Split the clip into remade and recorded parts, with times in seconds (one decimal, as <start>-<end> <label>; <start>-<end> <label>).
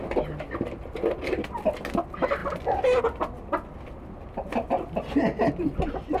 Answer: 0.0-6.2 recorded